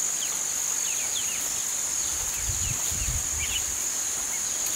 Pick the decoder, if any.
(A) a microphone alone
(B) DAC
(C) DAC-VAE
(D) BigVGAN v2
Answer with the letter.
A